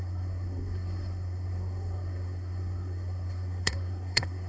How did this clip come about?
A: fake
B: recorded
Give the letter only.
A